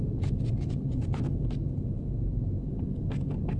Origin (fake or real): real